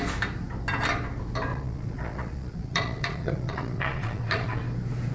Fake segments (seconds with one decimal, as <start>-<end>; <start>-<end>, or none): 1.5-4.6